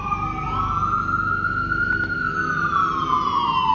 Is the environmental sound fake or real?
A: real